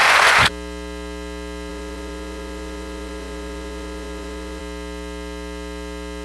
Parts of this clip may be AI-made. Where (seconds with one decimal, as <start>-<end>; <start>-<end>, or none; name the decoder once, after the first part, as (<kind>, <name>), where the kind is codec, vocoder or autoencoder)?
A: 0.0-0.5 (vocoder, Vocos); 1.7-4.6